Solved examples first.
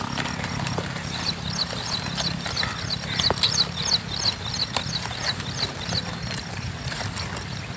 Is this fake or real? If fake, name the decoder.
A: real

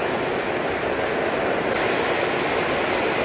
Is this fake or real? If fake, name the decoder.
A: real